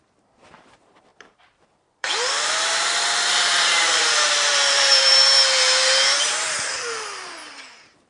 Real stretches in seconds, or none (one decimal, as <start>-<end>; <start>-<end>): none

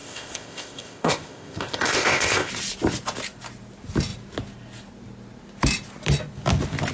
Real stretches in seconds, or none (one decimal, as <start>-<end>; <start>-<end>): 2.5-6.9

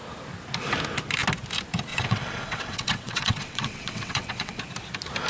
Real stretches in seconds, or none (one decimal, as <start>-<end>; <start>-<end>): 0.0-1.9; 4.6-5.3

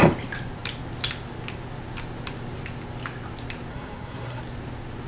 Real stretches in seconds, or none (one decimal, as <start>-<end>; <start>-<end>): 0.0-3.7; 4.4-5.1

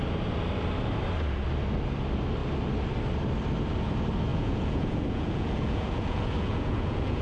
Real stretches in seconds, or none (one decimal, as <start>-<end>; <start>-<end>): 0.0-4.3

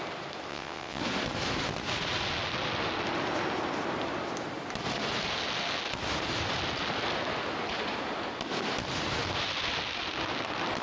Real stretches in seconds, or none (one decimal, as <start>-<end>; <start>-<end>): 0.0-0.5; 1.0-10.8

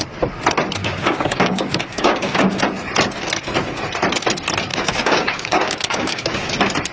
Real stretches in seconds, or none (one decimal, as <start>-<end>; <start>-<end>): 0.0-0.8; 2.6-4.7; 6.5-6.9

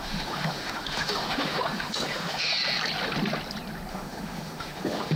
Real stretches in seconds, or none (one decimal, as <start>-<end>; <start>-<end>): 2.5-3.9